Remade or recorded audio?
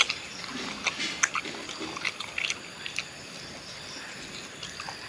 recorded